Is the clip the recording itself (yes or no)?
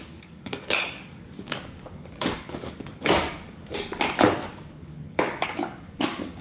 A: no